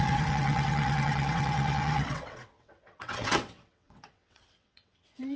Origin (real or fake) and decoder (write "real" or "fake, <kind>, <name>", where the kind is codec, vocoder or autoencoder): fake, vocoder, WaveNeXt